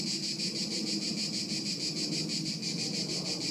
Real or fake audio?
real